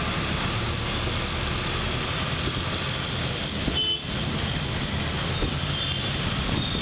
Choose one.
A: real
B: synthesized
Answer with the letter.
A